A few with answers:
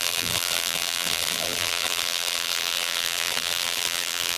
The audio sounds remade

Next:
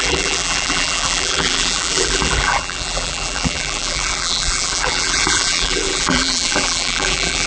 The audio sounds remade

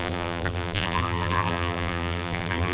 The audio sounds remade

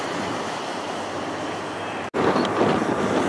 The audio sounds remade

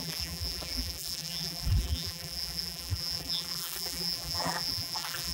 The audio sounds remade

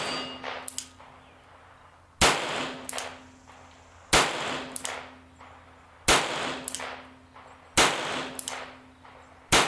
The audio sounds recorded